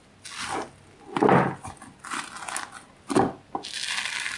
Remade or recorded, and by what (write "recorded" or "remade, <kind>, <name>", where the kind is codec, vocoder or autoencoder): recorded